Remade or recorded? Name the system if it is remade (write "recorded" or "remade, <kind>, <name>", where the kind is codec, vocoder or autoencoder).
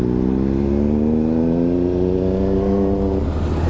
recorded